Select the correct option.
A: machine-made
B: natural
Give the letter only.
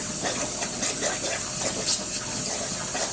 B